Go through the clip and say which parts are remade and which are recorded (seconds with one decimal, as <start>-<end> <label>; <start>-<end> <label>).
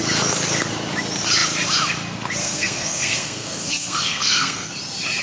0.0-2.4 recorded; 2.4-4.7 remade; 4.7-5.2 recorded